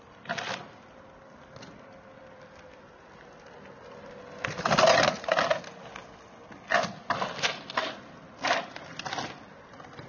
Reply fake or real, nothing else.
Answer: real